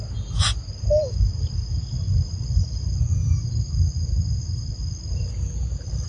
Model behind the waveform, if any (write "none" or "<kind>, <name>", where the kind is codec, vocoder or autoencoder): none